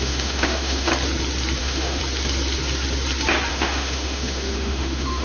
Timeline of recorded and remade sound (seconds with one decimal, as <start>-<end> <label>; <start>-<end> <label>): 0.0-0.9 remade; 0.9-1.6 recorded; 1.6-2.0 remade; 2.0-3.5 recorded; 3.5-5.2 remade